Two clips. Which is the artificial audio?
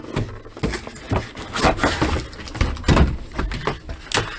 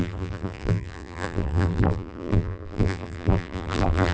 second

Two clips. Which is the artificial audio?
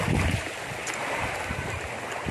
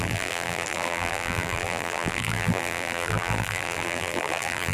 second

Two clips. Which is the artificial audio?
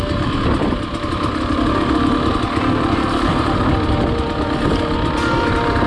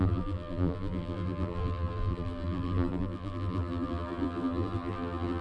second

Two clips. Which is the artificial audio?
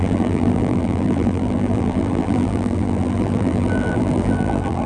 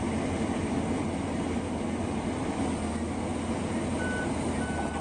first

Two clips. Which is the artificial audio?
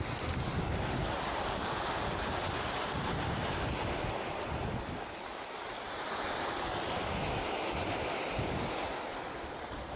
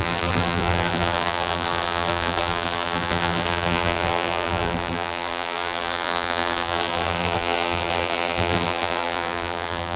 second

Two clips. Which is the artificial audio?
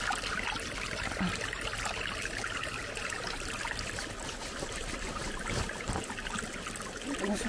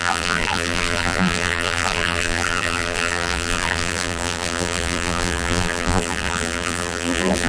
second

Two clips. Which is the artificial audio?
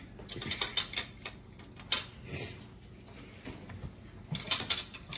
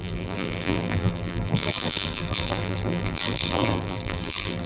second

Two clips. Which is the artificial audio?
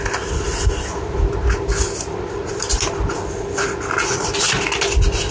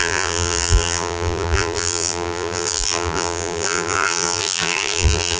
second